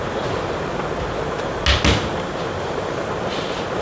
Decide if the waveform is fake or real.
real